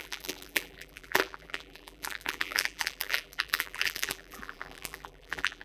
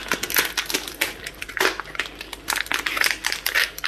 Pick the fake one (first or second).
first